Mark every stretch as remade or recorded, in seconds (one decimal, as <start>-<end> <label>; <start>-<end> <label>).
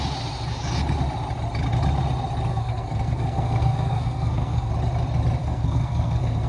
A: 0.0-2.5 recorded; 2.5-4.7 remade; 4.7-5.4 recorded; 5.4-6.5 remade